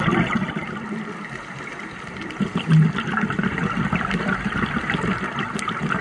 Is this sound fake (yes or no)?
no